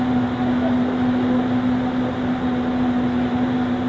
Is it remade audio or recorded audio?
recorded